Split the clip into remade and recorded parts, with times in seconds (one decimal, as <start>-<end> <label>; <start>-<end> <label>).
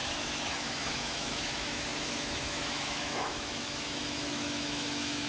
0.0-5.3 remade